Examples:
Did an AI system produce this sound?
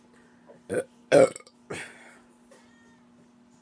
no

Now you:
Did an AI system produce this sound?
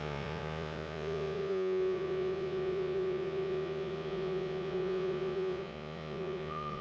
yes